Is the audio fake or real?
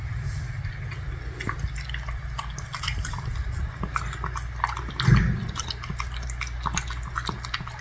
real